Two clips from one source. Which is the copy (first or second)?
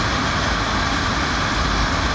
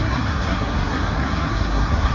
second